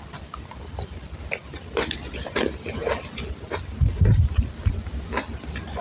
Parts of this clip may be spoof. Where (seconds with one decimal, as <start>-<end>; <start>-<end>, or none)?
none